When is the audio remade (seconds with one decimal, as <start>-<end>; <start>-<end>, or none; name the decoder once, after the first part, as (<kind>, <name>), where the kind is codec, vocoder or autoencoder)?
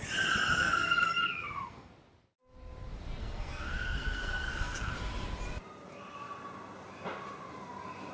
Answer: 0.6-1.9 (codec, SNAC); 3.2-4.9